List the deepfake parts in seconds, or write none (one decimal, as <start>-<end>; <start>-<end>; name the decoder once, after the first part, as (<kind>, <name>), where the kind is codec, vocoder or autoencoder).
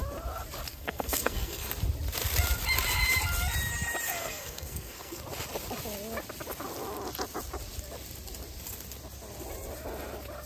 0.7-1.7 (codec, SNAC); 4.2-5.2